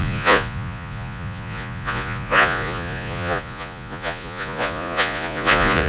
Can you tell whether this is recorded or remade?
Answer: remade